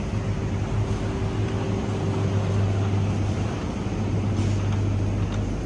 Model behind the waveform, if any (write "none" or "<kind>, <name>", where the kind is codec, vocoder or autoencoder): none